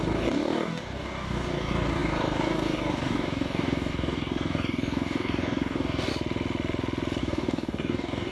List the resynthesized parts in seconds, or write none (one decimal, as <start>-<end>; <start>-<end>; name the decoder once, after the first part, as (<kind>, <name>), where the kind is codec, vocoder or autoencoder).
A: 0.0-6.1 (codec, DAC); 7.2-8.3